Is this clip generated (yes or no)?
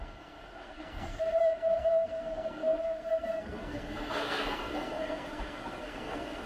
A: yes